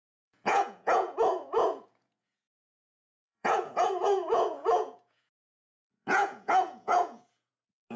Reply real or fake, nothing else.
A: fake